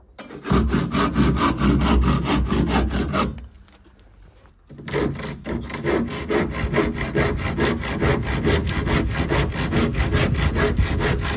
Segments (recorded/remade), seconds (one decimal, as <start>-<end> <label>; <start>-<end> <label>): 0.0-11.4 recorded